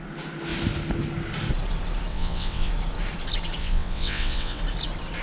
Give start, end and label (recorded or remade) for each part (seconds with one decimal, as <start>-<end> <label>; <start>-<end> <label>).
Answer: 0.0-2.1 recorded; 2.1-2.7 remade; 2.7-3.6 recorded; 3.6-4.6 remade; 4.6-5.2 recorded